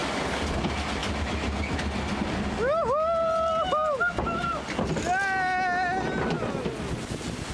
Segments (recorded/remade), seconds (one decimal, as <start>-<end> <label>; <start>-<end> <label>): 0.0-0.6 remade; 0.6-7.5 recorded

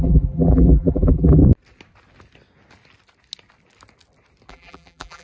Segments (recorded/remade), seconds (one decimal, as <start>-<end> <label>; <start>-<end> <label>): 0.0-1.4 remade; 1.4-4.5 recorded; 4.5-5.2 remade

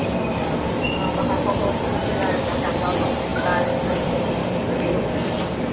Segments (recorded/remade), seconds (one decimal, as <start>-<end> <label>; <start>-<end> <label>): 0.0-5.7 recorded

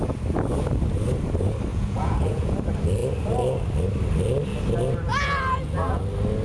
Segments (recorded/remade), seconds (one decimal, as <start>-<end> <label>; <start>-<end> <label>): 0.0-1.7 recorded; 1.7-2.5 remade; 2.5-5.1 recorded; 5.1-6.0 remade; 6.0-6.4 recorded

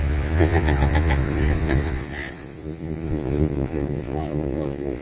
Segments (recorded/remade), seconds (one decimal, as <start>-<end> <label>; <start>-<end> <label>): 0.0-5.0 remade